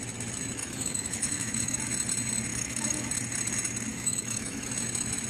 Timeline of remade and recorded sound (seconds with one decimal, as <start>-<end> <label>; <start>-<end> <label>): 0.0-0.6 recorded; 0.6-1.8 remade; 1.8-2.5 recorded; 2.5-3.1 remade; 3.1-3.9 recorded; 3.9-4.7 remade; 4.7-5.3 recorded